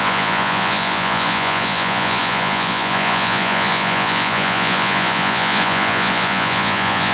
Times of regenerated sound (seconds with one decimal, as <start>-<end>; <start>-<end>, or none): 0.0-7.1